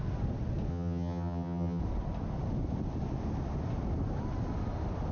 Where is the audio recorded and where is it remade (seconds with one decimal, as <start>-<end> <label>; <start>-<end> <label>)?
0.0-0.7 recorded; 0.7-1.8 remade; 1.8-5.1 recorded